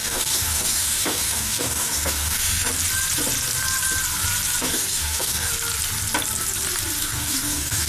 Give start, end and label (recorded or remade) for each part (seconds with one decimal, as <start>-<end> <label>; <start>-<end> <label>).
0.0-2.7 remade; 2.7-4.6 recorded; 4.6-5.5 remade; 5.5-7.0 recorded; 7.0-7.9 remade